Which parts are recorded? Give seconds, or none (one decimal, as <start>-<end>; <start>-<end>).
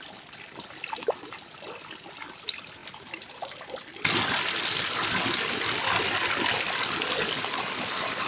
0.0-8.3